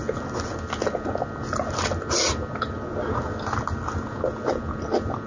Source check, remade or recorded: recorded